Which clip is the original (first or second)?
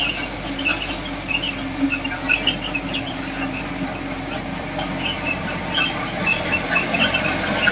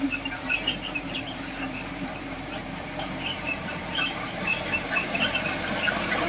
first